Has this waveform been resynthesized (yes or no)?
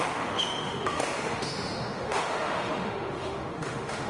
yes